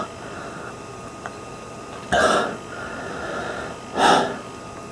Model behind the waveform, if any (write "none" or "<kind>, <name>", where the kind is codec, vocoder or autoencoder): none